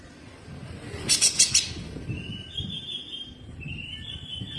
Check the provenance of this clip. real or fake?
real